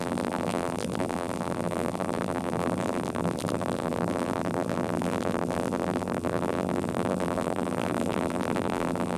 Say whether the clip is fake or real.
fake